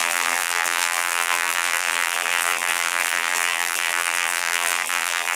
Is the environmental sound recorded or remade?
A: remade